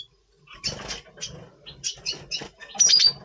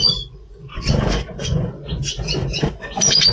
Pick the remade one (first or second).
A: second